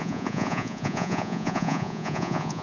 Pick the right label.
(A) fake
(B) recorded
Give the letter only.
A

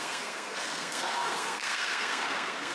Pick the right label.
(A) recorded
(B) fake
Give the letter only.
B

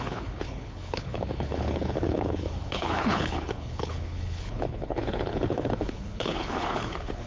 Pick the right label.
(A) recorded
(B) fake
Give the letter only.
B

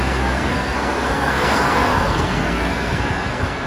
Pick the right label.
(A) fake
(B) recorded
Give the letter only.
A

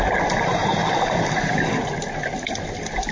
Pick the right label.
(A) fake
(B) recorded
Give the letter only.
B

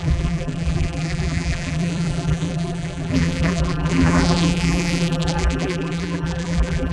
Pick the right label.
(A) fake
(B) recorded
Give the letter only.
A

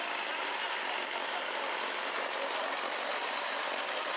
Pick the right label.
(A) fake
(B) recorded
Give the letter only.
B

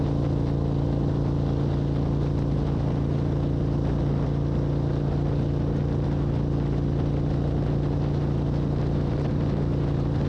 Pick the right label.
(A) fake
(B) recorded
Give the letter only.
B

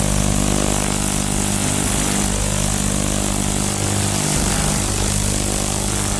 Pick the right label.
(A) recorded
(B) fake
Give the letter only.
A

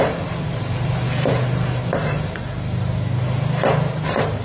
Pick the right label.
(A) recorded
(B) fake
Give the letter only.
B